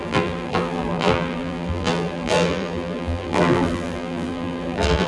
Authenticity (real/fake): fake